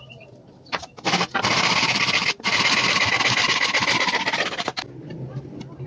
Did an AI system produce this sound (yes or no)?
no